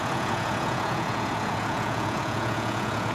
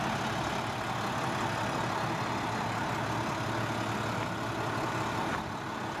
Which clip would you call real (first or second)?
second